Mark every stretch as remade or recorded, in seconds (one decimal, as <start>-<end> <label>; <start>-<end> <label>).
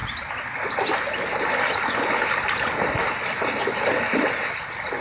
0.0-5.0 recorded